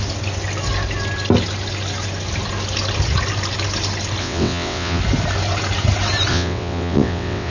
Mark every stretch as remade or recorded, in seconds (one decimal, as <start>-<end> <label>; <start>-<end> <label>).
0.0-4.2 recorded; 4.2-5.0 remade; 5.0-6.3 recorded; 6.3-7.5 remade